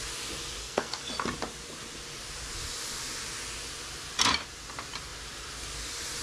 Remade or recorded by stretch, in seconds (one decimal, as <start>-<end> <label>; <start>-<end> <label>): 0.0-0.6 recorded; 0.6-1.1 remade; 1.1-6.2 recorded